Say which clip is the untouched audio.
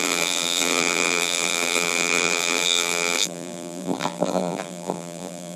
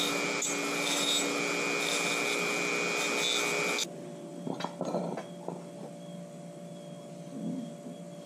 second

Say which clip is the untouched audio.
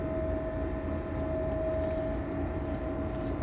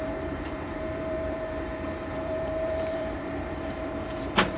first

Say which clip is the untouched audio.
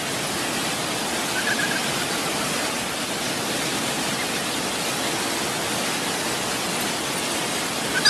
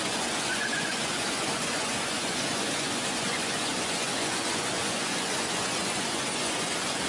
first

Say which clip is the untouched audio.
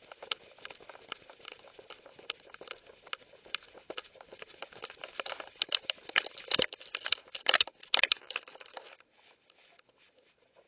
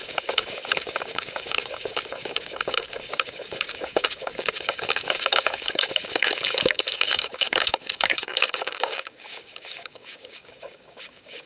first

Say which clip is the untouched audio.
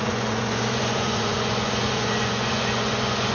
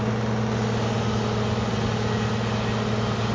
second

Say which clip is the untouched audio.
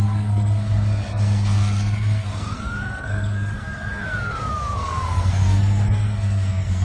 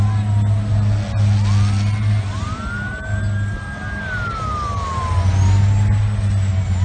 second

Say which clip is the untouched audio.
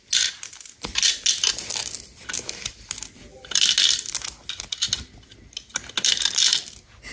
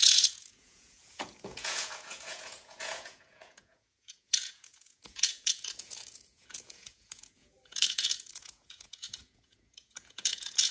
first